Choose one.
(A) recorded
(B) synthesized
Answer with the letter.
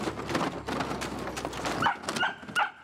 A